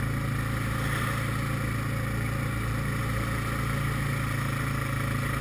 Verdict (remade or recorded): recorded